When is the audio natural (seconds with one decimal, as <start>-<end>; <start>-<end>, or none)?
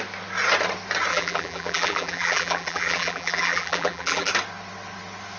0.0-1.1; 4.3-5.4